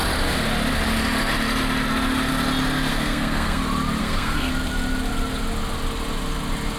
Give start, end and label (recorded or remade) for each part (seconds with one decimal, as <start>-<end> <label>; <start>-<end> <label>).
0.0-2.9 recorded; 2.9-3.6 remade; 3.6-4.0 recorded; 4.0-4.5 remade; 4.5-6.8 recorded